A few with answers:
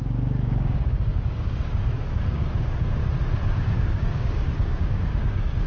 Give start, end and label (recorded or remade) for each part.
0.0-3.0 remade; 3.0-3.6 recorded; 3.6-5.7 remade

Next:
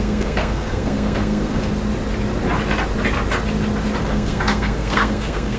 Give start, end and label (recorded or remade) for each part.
0.0-1.7 remade; 1.7-4.0 recorded; 4.0-5.6 remade

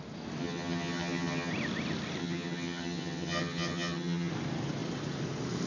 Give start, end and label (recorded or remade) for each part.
0.0-0.4 recorded; 0.4-1.5 remade; 1.5-2.2 recorded; 2.2-4.3 remade; 4.3-5.7 recorded

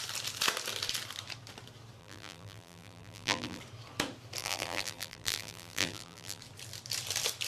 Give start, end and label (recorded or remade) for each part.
0.0-2.0 recorded; 2.0-3.6 remade; 3.6-4.4 recorded; 4.4-6.4 remade; 6.4-7.5 recorded

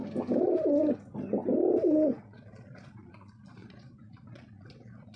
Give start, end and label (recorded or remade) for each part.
0.0-1.9 recorded; 1.9-5.2 remade

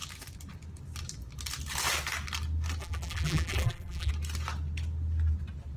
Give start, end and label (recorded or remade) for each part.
0.0-2.8 recorded; 2.8-4.1 remade; 4.1-5.8 recorded